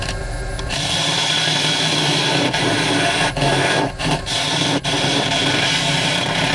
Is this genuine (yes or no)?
yes